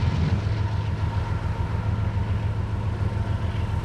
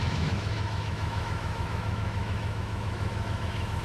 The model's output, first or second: second